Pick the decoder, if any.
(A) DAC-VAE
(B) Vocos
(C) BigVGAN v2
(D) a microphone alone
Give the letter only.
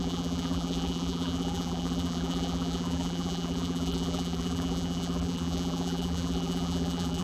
C